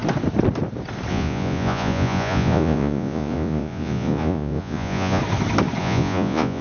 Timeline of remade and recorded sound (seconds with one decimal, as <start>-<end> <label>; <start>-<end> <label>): 0.0-1.1 recorded; 1.1-5.2 remade; 5.2-5.8 recorded; 5.8-6.6 remade